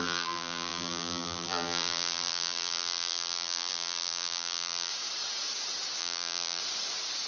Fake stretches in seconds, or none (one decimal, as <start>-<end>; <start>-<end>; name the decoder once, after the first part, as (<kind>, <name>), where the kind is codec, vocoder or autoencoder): 0.0-4.9 (vocoder, BigVGAN v2); 6.0-6.6